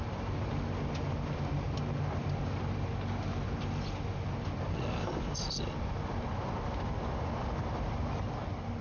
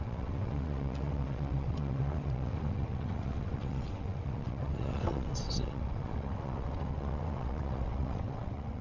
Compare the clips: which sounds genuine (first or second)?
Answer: first